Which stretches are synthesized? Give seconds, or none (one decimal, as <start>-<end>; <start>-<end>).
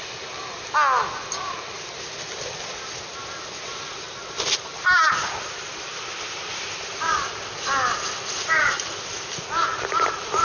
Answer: none